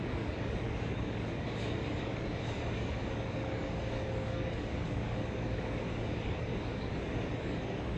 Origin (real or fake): fake